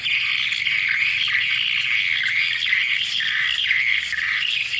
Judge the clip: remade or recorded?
recorded